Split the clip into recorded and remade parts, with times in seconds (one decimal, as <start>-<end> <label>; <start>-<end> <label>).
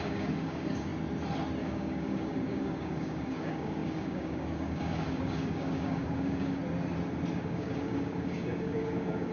0.0-0.9 remade; 0.9-1.6 recorded; 1.6-6.6 remade; 6.6-7.3 recorded; 7.3-9.3 remade